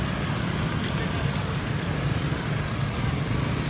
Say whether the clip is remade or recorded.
recorded